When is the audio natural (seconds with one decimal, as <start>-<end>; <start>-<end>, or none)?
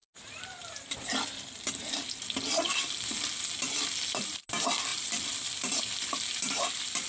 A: 2.5-4.9; 6.0-7.1